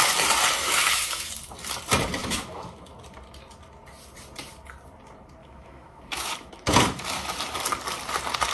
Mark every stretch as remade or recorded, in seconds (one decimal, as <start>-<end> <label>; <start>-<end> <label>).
0.0-0.6 recorded; 0.6-1.3 remade; 1.3-2.2 recorded; 2.2-3.0 remade; 3.0-5.4 recorded; 5.4-7.4 remade; 7.4-8.5 recorded